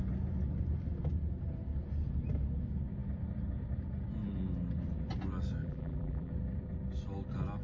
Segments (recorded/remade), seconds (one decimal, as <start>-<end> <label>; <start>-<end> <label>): 0.0-5.6 recorded; 5.6-6.3 remade; 6.3-7.6 recorded